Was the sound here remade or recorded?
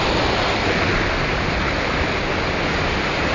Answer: recorded